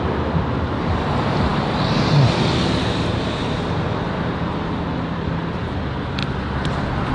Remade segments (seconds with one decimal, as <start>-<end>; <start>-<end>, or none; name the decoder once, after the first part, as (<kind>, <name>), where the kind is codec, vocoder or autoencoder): none